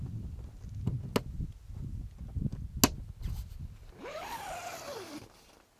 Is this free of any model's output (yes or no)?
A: yes